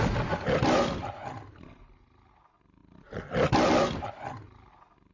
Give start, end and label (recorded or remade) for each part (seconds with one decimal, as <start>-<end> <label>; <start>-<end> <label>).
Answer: 0.0-5.1 recorded